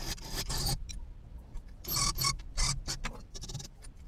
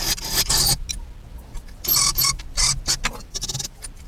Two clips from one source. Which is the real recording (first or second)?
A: second